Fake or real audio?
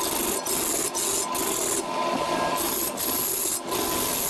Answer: real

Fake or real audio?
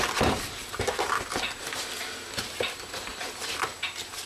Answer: real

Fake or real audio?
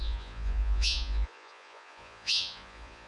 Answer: fake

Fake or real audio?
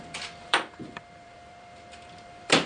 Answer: fake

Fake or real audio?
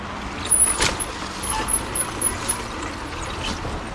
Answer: real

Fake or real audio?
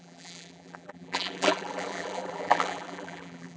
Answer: fake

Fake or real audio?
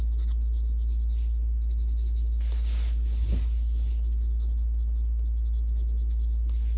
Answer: real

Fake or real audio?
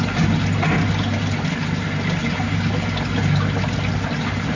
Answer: real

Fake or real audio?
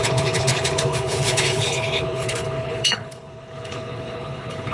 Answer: fake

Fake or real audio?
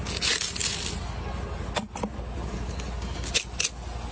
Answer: real